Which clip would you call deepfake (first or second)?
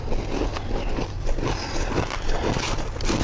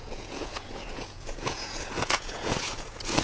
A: second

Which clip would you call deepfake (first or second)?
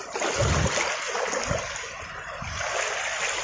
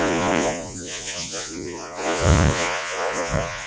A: second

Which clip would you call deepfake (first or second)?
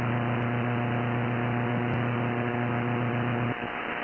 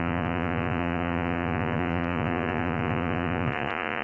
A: second